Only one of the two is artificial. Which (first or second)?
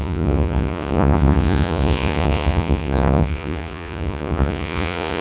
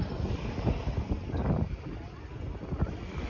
first